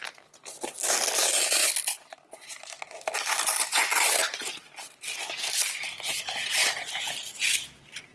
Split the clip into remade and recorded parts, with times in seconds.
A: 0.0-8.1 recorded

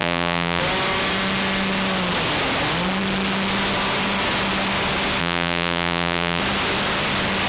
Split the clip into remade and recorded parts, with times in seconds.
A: 0.0-0.6 remade; 0.6-5.2 recorded; 5.2-6.4 remade; 6.4-7.5 recorded